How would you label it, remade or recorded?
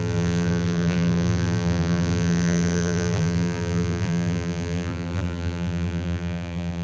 remade